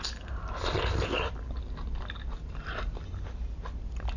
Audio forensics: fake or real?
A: real